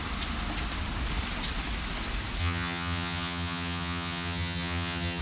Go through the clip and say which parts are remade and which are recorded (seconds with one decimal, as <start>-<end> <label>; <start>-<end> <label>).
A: 0.0-2.4 recorded; 2.4-5.2 remade